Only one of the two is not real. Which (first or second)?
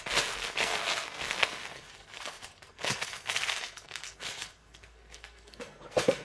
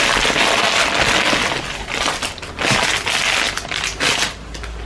first